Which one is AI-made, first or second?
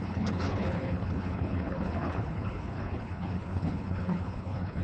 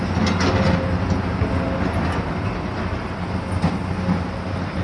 first